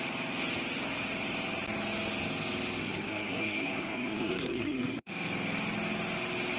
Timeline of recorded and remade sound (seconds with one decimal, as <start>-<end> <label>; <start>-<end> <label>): 0.0-2.8 recorded; 2.8-5.1 remade; 5.1-6.6 recorded